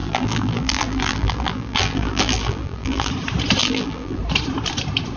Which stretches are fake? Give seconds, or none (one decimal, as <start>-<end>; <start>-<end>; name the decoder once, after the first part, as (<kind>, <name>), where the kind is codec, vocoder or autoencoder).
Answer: 0.0-3.1 (vocoder, BigVGAN v2); 3.6-4.2